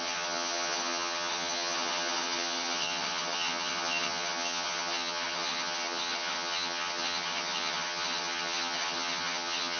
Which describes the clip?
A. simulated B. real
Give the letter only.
A